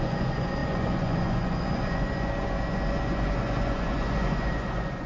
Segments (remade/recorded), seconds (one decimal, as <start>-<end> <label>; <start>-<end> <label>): 0.0-5.1 remade